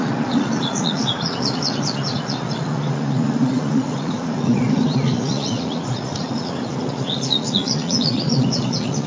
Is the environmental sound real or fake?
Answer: fake